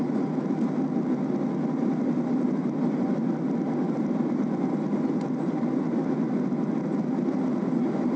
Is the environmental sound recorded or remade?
recorded